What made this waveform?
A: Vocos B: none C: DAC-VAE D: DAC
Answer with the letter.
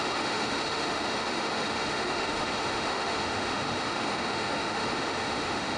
C